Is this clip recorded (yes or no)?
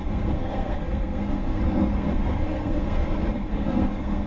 no